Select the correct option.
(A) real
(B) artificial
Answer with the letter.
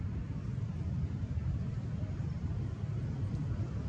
B